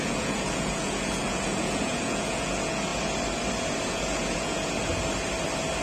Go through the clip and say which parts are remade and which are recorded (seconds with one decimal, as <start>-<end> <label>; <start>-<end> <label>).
0.0-2.9 remade; 2.9-3.9 recorded; 3.9-4.9 remade; 4.9-5.8 recorded